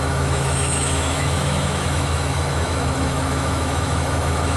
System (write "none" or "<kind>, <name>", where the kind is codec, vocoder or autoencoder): autoencoder, DAC-VAE